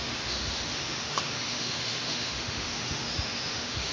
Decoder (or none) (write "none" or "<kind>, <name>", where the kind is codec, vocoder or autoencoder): autoencoder, DAC-VAE